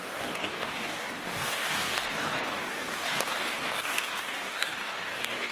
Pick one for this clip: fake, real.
fake